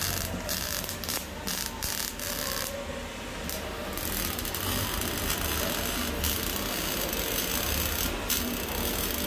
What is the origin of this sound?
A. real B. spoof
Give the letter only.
A